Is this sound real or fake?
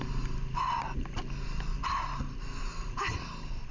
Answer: real